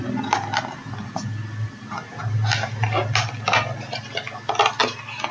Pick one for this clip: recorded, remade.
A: recorded